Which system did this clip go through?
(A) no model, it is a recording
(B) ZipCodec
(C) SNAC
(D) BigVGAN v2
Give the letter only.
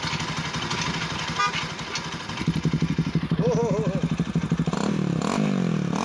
A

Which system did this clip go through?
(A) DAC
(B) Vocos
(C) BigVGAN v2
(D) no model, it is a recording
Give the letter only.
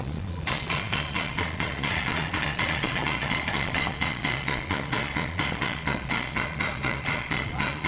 B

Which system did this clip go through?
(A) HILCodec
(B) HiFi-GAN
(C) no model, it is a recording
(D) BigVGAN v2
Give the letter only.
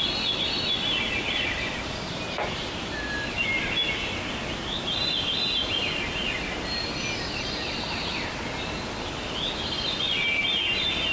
C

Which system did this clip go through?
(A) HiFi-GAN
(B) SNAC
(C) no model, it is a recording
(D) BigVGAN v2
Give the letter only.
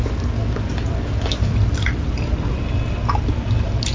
C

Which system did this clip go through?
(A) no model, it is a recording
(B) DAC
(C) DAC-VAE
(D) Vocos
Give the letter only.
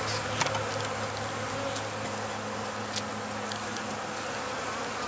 A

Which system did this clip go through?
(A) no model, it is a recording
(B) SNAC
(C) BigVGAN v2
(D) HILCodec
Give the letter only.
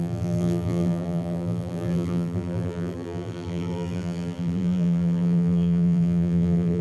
C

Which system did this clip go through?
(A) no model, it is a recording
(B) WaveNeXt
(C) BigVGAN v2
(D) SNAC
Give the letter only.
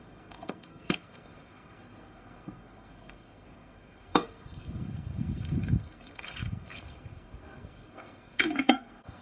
D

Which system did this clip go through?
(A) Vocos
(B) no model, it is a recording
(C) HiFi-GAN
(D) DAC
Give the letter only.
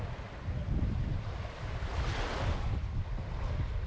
B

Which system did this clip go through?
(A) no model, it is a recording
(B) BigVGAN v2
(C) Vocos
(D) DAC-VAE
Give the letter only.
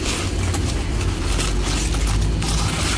A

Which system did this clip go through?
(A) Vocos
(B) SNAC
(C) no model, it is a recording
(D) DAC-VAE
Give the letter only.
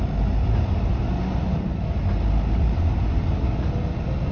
C